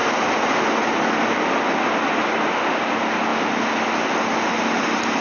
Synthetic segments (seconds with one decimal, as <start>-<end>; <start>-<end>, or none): none